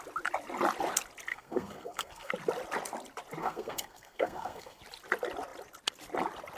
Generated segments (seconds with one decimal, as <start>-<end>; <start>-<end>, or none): 1.3-2.3; 3.4-4.8